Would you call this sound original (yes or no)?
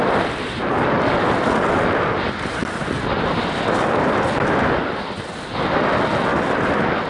yes